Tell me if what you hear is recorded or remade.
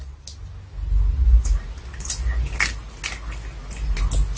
recorded